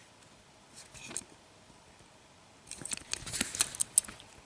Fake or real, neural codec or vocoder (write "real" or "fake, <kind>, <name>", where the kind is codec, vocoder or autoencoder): real